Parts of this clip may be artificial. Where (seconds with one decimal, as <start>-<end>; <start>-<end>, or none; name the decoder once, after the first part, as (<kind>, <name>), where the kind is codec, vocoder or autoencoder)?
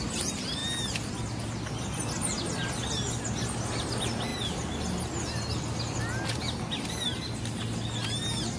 none